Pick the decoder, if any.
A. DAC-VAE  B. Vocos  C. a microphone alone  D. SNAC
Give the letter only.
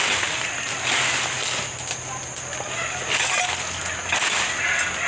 C